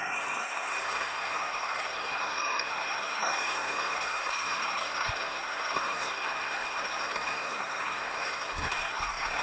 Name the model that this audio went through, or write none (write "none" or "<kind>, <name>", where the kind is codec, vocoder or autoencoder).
codec, SNAC